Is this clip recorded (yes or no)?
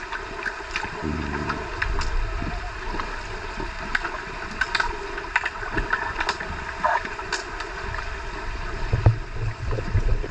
yes